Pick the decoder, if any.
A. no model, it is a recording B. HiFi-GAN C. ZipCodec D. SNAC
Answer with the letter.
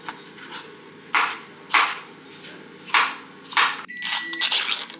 A